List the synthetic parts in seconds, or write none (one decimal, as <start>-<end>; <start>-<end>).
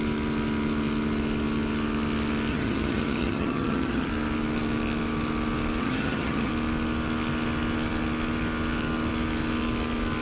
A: 2.5-4.1; 5.8-6.5